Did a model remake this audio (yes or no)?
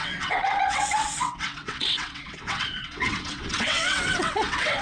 yes